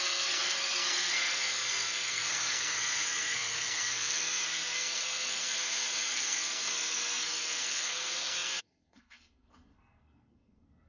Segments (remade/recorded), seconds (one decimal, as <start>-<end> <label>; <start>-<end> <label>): 0.0-10.9 remade